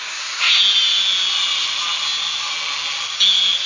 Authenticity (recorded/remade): recorded